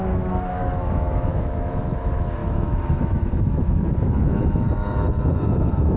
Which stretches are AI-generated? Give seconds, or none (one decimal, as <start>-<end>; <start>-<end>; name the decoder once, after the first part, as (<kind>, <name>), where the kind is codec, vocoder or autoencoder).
0.0-6.0 (autoencoder, DAC-VAE)